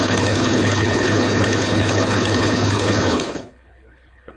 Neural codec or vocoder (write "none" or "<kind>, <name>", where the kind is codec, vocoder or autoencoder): codec, HILCodec